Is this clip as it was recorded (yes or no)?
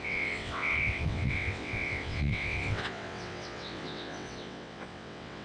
no